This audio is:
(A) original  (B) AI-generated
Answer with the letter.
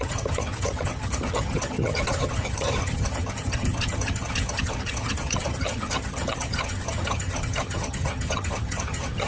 B